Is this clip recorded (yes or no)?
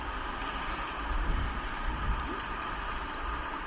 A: yes